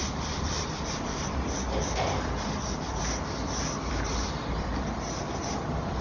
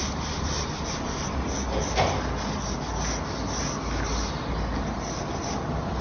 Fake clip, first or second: first